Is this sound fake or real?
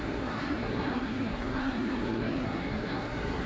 fake